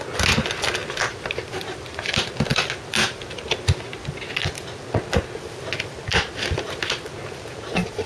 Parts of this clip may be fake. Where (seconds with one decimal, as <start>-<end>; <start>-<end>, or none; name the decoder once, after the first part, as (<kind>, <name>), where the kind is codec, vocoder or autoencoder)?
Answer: none